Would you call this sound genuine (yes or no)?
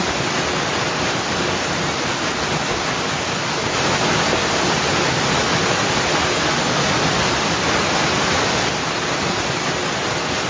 yes